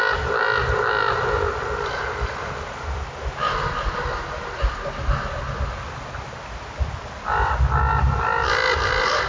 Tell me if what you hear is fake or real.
real